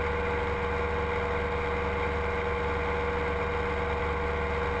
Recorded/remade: recorded